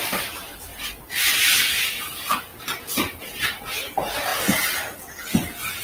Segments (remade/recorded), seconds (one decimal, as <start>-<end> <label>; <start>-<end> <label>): 0.0-0.7 remade; 0.7-1.3 recorded; 1.3-2.5 remade; 2.5-3.2 recorded; 3.2-4.3 remade; 4.3-5.1 recorded; 5.1-5.8 remade